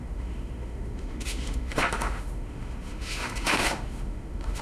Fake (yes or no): yes